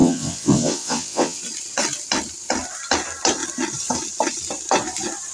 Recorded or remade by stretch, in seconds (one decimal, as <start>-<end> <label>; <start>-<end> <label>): 0.0-1.4 remade; 1.4-5.3 recorded